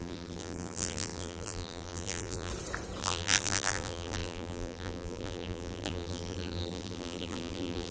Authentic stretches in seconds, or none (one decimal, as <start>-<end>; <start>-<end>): 2.5-3.0

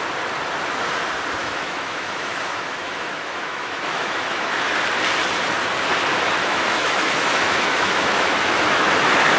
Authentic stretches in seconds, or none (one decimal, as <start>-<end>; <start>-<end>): 0.0-1.4; 4.7-6.4; 8.9-9.4

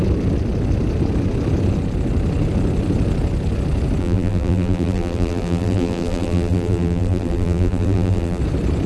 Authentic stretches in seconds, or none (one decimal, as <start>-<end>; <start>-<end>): 0.0-4.0; 8.4-8.9

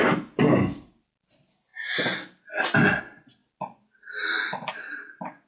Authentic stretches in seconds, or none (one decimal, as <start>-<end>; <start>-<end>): 0.0-5.5

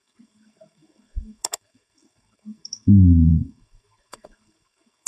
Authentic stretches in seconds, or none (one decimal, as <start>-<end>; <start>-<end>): none

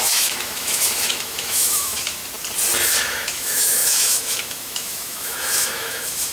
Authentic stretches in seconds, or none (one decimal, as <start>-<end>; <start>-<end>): 2.2-3.0

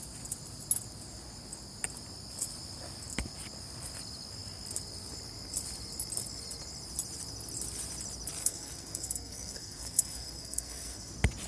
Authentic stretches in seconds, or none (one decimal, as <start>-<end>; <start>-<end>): 0.0-8.4; 11.1-11.5